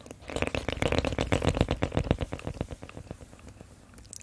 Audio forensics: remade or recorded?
recorded